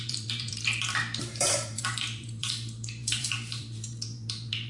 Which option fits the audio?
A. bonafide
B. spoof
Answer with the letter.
B